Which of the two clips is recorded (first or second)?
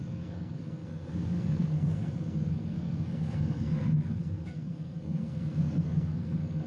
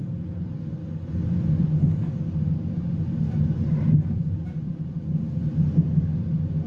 second